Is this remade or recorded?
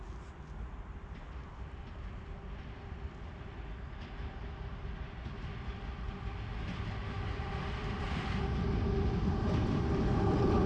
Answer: recorded